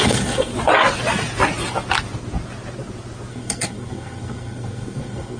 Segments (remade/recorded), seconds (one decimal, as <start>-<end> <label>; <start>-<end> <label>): 0.0-0.5 remade; 0.5-3.3 recorded; 3.3-5.4 remade